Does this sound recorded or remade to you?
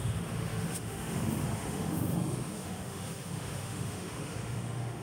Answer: remade